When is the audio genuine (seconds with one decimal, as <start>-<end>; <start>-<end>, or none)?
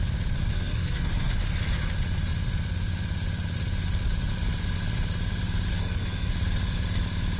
0.0-0.5; 1.3-5.7; 6.3-7.4